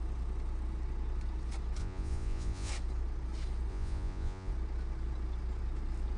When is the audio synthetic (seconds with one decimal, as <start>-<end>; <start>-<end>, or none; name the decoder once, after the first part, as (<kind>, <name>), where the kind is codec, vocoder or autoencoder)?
1.8-2.7 (vocoder, Vocos); 3.7-4.5